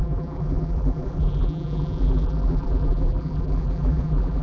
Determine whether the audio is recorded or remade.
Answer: remade